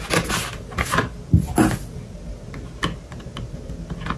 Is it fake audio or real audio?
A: real